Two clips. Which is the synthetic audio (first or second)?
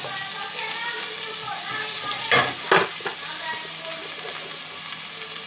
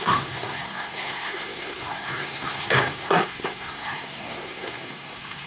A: second